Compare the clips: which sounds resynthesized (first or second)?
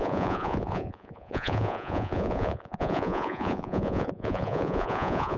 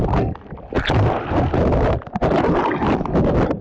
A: first